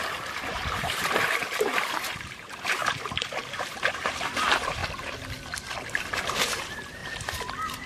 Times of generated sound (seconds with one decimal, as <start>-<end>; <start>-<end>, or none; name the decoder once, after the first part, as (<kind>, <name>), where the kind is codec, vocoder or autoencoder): 0.0-4.8 (vocoder, BigVGAN v2); 5.9-7.9